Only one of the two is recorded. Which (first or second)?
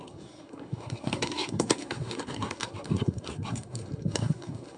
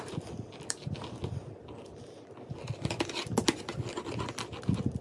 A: second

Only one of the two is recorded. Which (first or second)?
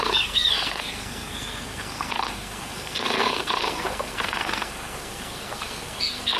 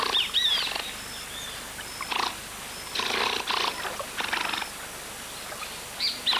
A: second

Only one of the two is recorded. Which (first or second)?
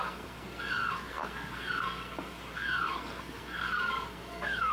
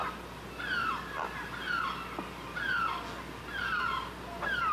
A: second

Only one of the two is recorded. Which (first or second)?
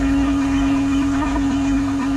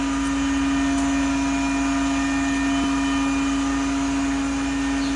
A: second